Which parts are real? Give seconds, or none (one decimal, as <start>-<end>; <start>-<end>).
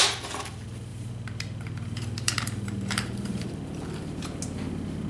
0.0-0.9; 3.5-5.1